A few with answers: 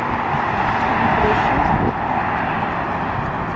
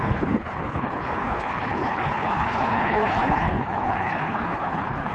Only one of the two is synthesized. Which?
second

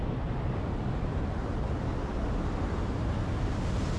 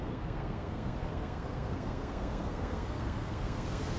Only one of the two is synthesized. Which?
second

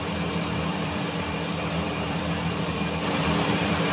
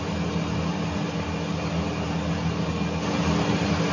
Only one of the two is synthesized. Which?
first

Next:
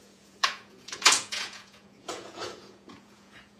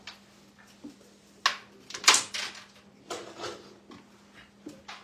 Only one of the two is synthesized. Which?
first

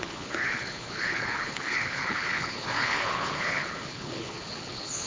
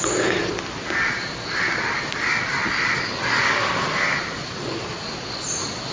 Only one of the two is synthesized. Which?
first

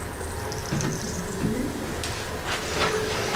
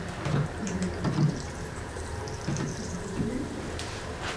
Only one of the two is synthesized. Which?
second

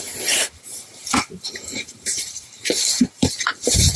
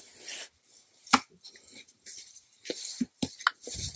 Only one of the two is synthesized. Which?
first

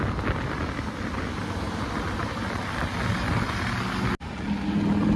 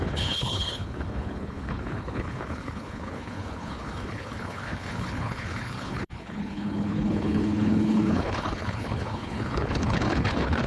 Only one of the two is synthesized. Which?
second